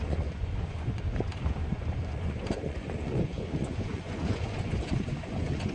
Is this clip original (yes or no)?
no